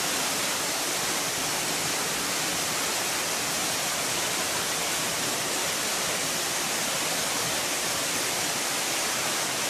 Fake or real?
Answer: real